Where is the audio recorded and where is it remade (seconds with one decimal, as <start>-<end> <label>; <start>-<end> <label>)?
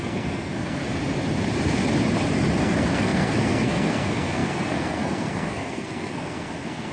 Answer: 0.0-0.8 remade; 0.8-2.6 recorded; 2.6-6.9 remade